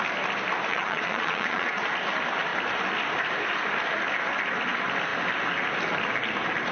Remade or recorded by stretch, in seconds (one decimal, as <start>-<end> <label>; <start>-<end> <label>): 0.0-0.7 recorded; 0.7-1.8 remade; 1.8-6.7 recorded